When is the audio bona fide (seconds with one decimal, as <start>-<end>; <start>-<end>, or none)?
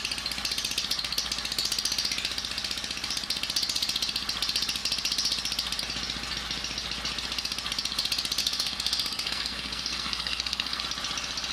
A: 0.0-8.4; 10.8-11.5